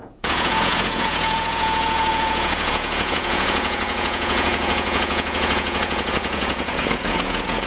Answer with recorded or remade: remade